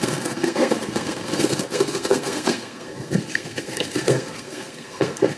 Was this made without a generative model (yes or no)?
no